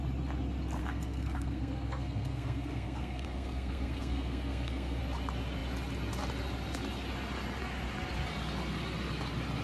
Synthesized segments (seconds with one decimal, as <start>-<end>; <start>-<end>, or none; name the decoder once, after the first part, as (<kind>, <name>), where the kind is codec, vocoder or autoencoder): 0.8-5.0 (codec, SNAC)